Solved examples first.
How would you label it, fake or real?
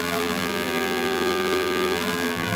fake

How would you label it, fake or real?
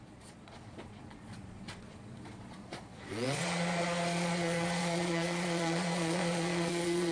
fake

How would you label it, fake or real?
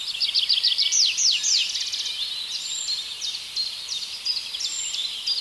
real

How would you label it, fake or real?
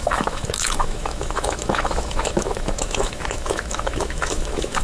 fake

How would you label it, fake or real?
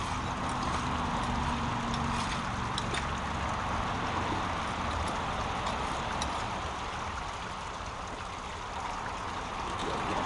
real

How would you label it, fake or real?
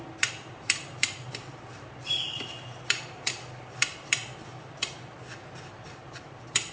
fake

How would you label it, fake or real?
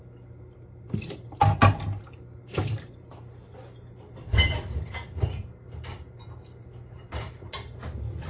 real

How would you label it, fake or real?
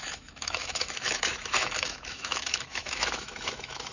fake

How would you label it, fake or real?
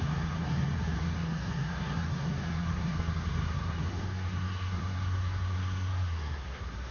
fake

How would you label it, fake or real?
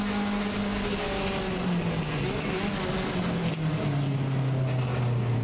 real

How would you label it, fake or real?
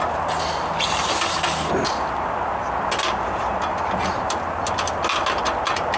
real